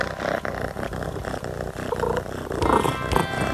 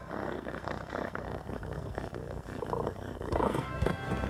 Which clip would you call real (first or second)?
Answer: first